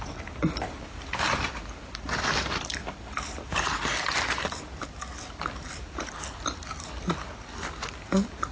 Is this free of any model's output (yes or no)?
yes